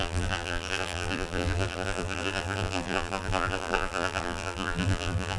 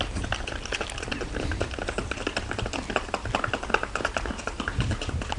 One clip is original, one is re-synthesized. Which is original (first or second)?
second